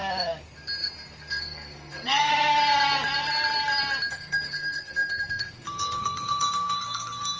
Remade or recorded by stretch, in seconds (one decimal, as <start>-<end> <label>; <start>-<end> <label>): 0.0-1.3 recorded; 1.3-2.3 remade; 2.3-4.1 recorded; 4.1-7.4 remade